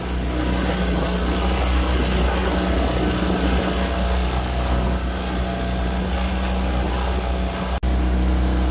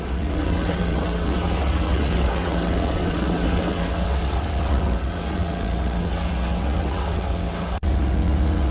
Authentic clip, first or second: first